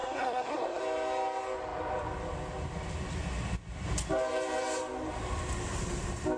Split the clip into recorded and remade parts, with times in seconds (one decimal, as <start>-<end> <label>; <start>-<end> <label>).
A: 0.0-0.8 remade; 0.8-6.4 recorded